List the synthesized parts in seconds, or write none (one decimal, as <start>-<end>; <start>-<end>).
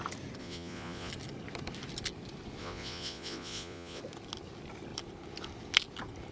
0.4-1.1; 2.6-4.0